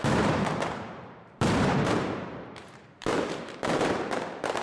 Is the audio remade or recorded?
remade